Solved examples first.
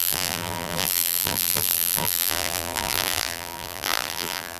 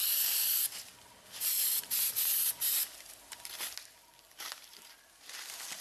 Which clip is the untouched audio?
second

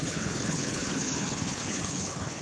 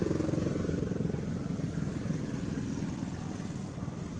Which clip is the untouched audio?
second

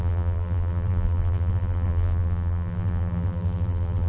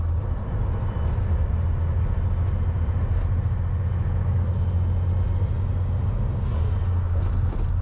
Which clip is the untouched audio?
second